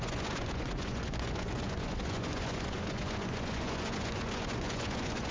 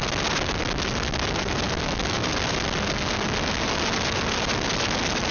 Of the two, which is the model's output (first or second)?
first